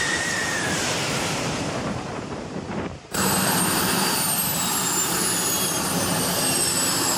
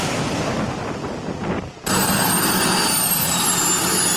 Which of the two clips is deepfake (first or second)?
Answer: first